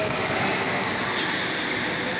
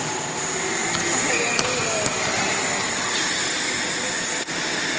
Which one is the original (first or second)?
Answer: first